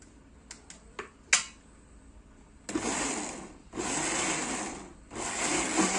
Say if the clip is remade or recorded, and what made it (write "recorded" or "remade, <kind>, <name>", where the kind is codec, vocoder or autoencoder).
recorded